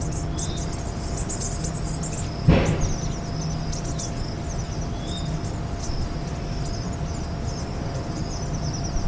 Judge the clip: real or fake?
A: real